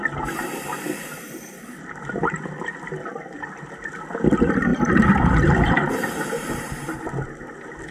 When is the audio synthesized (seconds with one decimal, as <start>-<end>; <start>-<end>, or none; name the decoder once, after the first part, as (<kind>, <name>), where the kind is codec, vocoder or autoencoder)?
4.7-7.0 (vocoder, BigVGAN v2)